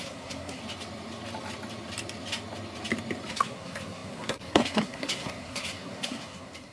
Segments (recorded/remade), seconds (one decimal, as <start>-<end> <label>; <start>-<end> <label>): 0.0-0.6 remade; 0.6-3.3 recorded; 3.3-6.7 remade